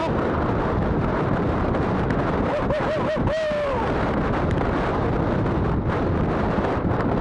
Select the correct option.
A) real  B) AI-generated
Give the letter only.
A